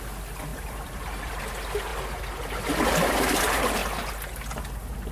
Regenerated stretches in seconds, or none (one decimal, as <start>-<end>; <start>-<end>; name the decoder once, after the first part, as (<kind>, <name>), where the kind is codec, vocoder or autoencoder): 0.5-1.4 (vocoder, BigVGAN v2)